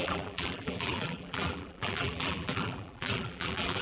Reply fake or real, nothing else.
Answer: fake